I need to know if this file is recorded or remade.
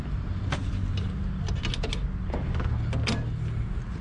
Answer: recorded